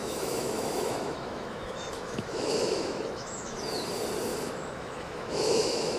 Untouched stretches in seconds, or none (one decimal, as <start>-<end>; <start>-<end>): 3.6-4.3